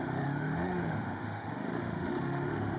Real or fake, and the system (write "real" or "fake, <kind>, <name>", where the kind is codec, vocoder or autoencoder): fake, autoencoder, DAC-VAE